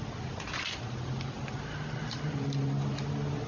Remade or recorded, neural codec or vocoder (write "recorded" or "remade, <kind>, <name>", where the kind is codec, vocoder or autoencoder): remade, vocoder, BigVGAN v2